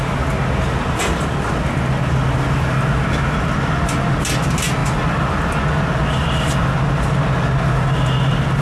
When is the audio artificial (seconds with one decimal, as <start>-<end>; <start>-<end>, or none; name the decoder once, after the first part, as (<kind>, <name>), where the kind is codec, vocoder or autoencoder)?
none